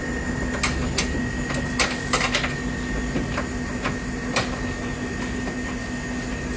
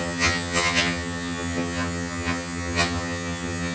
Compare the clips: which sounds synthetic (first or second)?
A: second